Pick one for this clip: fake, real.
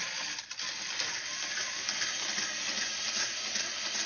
real